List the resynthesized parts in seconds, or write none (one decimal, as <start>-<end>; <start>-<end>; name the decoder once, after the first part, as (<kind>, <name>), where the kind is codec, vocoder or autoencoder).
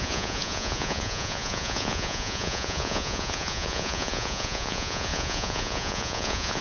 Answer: 0.0-6.6 (vocoder, Vocos)